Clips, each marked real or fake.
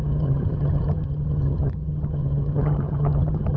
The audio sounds fake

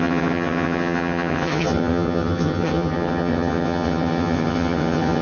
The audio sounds fake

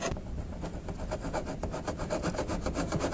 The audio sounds real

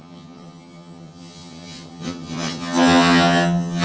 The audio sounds fake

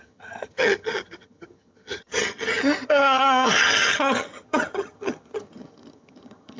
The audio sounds fake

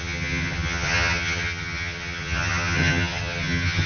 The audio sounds fake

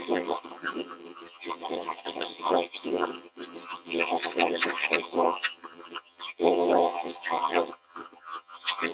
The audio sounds fake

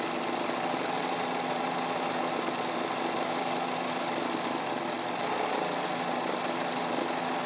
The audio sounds real